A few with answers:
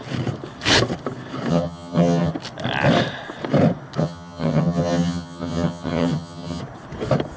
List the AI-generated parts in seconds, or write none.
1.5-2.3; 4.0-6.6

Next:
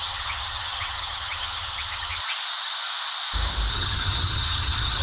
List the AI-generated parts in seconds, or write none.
0.0-2.2; 3.7-5.0

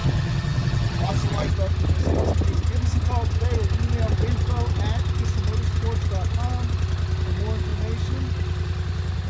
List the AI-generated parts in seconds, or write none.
0.0-1.5

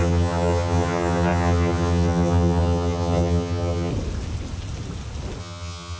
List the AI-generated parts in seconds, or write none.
0.0-3.9; 5.4-6.0

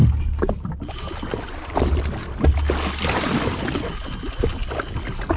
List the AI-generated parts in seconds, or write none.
none

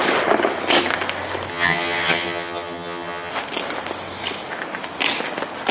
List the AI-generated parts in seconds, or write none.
1.5-3.3